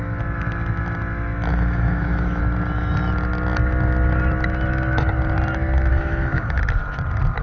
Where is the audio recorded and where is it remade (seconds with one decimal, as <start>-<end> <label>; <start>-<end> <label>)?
0.0-1.5 recorded; 1.5-2.4 remade; 2.4-5.9 recorded; 5.9-6.6 remade; 6.6-7.4 recorded